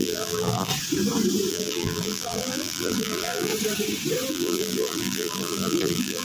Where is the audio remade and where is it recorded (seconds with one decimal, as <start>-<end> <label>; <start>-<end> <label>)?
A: 0.0-0.7 remade; 0.7-1.5 recorded; 1.5-3.5 remade; 3.5-4.3 recorded; 4.3-6.2 remade